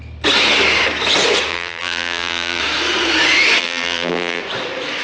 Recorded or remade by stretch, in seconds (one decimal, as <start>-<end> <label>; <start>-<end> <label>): 0.0-1.5 recorded; 1.5-2.6 remade; 2.6-3.6 recorded; 3.6-4.4 remade; 4.4-5.0 recorded